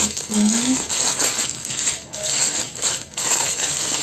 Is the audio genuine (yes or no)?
no